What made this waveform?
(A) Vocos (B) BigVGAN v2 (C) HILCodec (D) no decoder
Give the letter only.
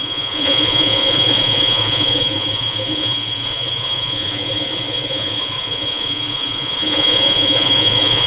A